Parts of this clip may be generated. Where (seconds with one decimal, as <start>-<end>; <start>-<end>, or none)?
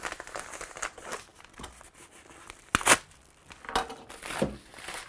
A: none